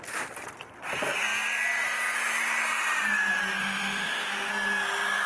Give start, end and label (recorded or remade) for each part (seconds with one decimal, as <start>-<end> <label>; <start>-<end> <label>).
0.0-3.6 recorded; 3.6-4.5 remade; 4.5-5.3 recorded